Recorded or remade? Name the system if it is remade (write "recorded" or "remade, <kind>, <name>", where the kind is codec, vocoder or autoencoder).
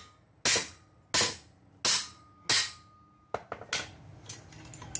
recorded